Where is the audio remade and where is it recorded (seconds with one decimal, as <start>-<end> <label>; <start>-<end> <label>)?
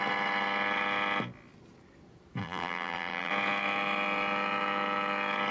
0.0-2.4 recorded; 2.4-3.3 remade; 3.3-5.5 recorded